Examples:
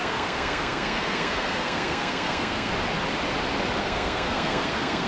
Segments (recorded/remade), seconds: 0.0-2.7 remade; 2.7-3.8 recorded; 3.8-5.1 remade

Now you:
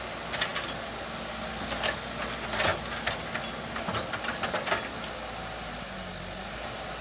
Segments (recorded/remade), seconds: 0.0-7.0 recorded

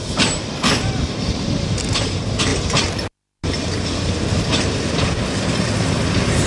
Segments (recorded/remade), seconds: 0.0-6.5 recorded

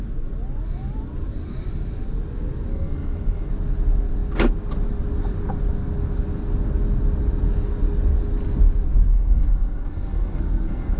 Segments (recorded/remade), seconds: 0.0-2.7 recorded; 2.7-3.5 remade; 3.5-9.1 recorded; 9.1-11.0 remade